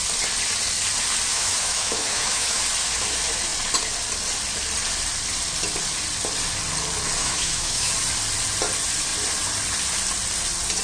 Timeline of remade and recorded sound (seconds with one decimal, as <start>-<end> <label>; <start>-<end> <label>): 0.0-1.3 recorded; 1.3-2.6 remade; 2.6-7.2 recorded; 7.2-7.9 remade; 7.9-10.8 recorded